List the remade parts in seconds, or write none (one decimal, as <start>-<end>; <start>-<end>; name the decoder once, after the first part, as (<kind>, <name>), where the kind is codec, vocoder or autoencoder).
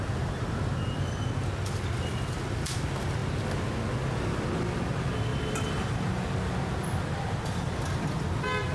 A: 5.3-6.2 (vocoder, BigVGAN v2)